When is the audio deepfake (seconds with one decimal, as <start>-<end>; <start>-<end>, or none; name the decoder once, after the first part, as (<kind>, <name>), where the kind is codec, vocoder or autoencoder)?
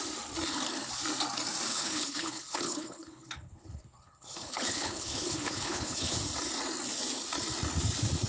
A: 1.7-6.2 (codec, HILCodec)